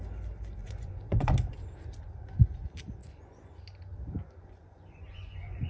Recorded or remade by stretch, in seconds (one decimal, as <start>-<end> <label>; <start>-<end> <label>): 0.0-0.6 recorded; 0.6-1.3 remade; 1.3-3.0 recorded; 3.0-3.6 remade; 3.6-4.4 recorded; 4.4-5.7 remade